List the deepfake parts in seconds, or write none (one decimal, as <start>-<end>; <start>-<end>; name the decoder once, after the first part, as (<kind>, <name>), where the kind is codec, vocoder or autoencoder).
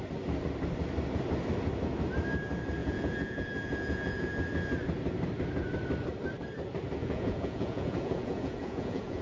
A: 2.8-4.3 (vocoder, Vocos); 7.0-9.2